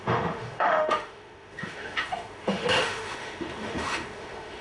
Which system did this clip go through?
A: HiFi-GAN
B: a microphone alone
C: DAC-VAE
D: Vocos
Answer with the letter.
C